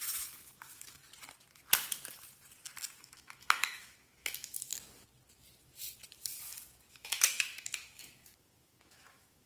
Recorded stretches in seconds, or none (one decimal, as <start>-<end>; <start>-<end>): 1.0-3.0; 4.7-6.9